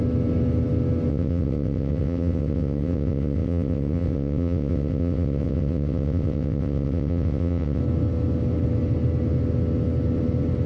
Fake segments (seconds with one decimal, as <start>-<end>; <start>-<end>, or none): 1.1-7.8